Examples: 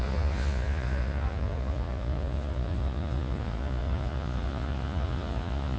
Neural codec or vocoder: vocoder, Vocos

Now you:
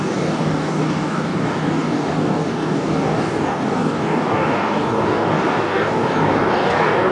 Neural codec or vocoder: codec, DAC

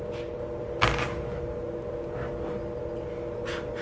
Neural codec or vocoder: none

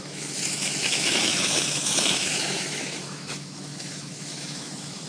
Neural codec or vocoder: autoencoder, DAC-VAE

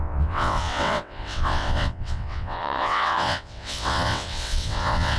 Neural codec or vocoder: vocoder, WaveNeXt